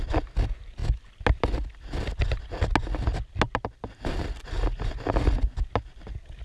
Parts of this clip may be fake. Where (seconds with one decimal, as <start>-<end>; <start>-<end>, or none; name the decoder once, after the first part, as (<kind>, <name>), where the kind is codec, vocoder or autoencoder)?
none